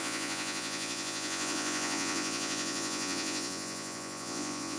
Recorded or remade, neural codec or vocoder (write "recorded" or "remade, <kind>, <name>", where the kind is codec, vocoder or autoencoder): remade, vocoder, Vocos